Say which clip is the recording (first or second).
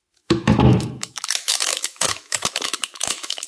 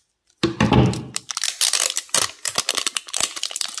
second